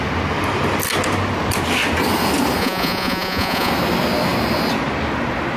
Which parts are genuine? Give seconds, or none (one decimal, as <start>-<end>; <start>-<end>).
0.0-2.6; 3.7-5.6